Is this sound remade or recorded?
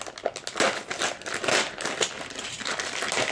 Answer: recorded